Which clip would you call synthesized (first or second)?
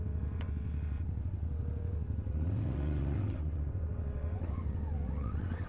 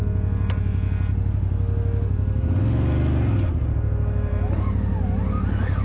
first